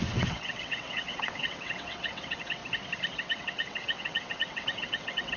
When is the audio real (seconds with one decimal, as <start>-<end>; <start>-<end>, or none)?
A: 2.6-3.1